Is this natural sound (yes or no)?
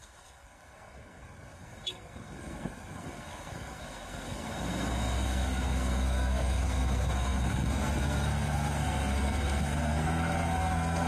no